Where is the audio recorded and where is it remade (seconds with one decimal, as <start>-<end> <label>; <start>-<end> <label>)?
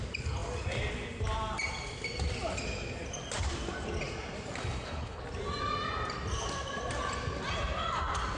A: 0.0-4.6 recorded; 4.6-5.2 remade; 5.2-8.4 recorded